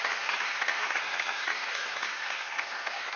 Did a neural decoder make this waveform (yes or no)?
yes